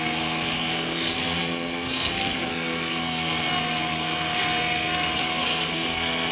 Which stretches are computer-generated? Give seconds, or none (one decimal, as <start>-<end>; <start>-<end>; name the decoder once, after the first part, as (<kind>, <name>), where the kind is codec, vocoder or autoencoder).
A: 0.0-6.3 (codec, SNAC)

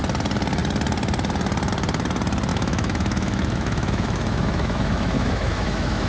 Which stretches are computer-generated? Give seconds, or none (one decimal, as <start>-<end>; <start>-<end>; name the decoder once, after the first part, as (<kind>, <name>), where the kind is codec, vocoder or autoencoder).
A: 2.5-6.1 (autoencoder, DAC-VAE)

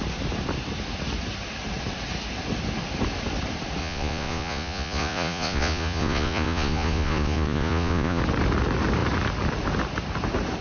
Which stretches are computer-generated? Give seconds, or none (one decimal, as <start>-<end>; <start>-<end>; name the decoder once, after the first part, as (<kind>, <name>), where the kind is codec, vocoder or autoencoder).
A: 3.8-8.2 (vocoder, Vocos)

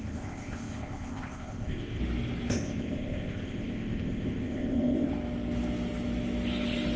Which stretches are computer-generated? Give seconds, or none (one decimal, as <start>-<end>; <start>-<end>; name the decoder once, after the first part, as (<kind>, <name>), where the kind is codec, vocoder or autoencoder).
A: 0.0-2.0 (codec, ZipCodec); 2.5-5.1

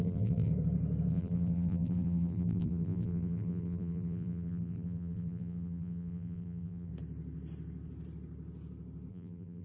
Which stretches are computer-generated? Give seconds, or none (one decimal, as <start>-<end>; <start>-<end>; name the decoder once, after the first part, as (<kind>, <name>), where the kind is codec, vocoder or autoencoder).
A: 0.0-0.5 (vocoder, BigVGAN v2); 1.1-6.9; 9.1-9.6

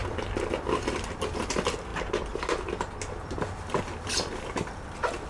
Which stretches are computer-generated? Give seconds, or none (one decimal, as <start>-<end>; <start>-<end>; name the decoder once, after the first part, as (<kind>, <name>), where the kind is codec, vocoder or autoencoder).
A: none

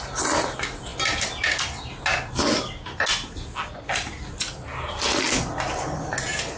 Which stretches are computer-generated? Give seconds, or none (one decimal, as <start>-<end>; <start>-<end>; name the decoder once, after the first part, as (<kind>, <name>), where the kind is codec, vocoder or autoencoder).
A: none

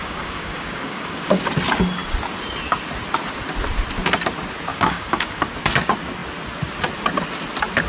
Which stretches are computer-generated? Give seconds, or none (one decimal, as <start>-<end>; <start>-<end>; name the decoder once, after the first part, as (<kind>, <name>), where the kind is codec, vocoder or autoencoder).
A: 0.0-1.5 (codec, DAC); 4.7-5.4